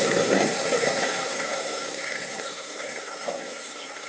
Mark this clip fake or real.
fake